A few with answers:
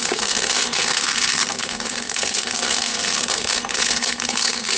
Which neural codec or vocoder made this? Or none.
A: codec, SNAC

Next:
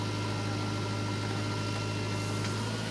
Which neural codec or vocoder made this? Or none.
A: none